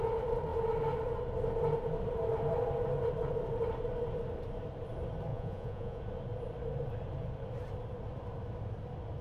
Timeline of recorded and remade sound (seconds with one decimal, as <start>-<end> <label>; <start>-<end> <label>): 0.0-5.3 recorded; 5.3-6.0 remade; 6.0-9.2 recorded